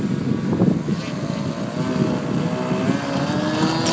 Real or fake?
real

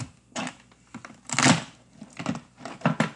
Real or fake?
real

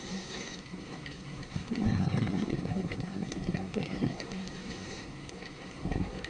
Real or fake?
fake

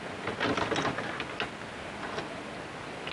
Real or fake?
real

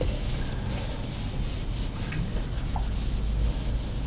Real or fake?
real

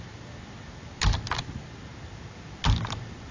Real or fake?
real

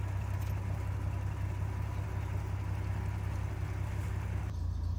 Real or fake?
real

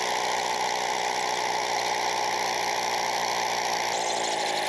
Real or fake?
real